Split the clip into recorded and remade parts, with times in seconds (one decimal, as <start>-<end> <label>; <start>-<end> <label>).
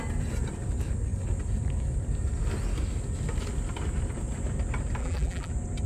0.0-5.0 recorded; 5.0-5.5 remade; 5.5-5.9 recorded